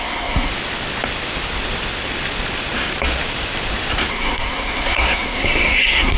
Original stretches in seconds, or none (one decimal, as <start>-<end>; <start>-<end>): 0.5-4.1